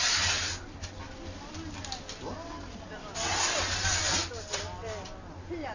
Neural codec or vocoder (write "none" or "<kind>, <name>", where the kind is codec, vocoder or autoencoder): none